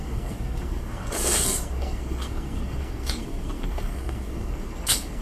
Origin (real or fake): fake